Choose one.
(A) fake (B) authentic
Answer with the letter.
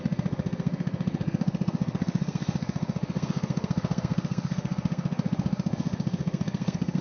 A